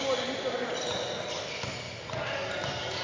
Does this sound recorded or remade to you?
recorded